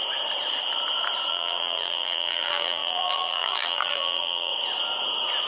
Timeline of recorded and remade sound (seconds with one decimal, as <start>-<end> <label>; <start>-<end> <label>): 0.0-1.3 recorded; 1.3-4.5 remade; 4.5-5.5 recorded